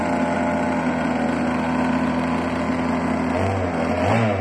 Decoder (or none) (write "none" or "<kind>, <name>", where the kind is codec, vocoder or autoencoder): none